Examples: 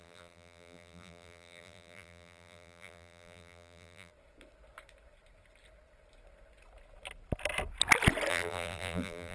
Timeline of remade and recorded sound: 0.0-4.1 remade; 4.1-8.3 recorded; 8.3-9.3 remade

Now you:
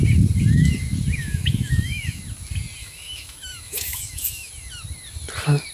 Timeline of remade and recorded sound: 0.0-1.2 recorded; 1.2-2.2 remade; 2.2-2.8 recorded; 2.8-4.5 remade; 4.5-5.7 recorded

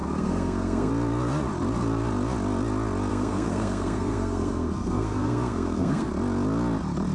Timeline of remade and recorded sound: 0.0-0.9 remade; 0.9-3.1 recorded; 3.1-6.1 remade; 6.1-7.1 recorded

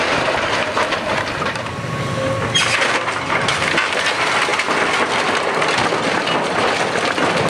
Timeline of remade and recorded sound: 0.0-7.5 recorded

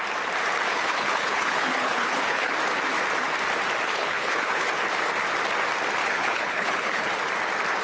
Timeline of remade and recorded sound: 0.0-0.7 recorded; 0.7-2.5 remade; 2.5-3.9 recorded; 3.9-4.7 remade; 4.7-6.0 recorded; 6.0-7.1 remade; 7.1-7.8 recorded

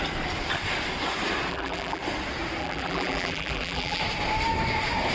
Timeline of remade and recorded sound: 0.0-1.5 recorded; 1.5-2.0 remade; 2.0-2.6 recorded; 2.6-4.0 remade; 4.0-5.1 recorded

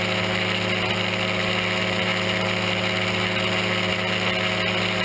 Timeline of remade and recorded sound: 0.0-5.0 recorded